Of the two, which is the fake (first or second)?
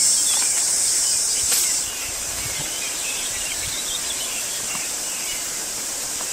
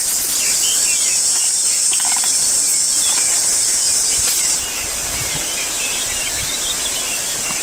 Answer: first